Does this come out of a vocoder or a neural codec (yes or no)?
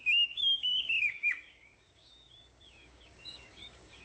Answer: yes